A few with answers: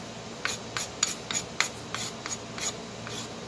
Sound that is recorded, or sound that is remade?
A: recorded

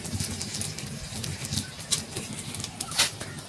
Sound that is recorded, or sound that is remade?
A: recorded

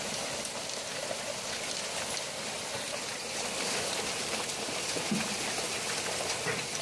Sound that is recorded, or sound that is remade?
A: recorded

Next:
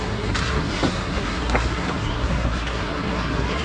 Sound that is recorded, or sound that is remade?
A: remade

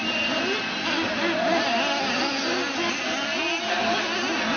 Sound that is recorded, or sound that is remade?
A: recorded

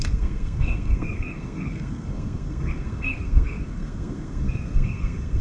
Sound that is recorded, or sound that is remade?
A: remade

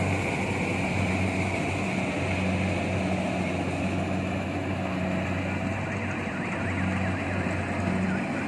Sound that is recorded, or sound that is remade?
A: recorded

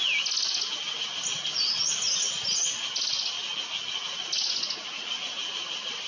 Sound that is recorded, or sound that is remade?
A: recorded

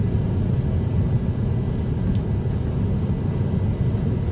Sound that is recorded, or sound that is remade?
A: recorded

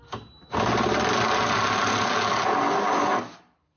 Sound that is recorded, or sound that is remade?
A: recorded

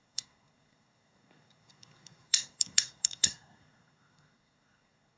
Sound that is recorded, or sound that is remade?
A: remade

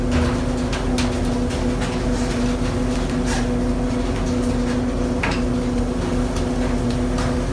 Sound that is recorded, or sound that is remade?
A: recorded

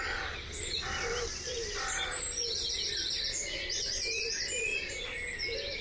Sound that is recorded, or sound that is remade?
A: recorded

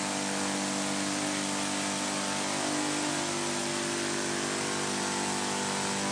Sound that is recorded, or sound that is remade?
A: recorded